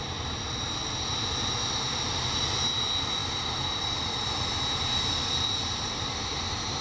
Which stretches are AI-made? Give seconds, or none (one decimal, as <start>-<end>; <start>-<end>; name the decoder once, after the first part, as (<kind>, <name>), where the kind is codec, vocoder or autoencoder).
none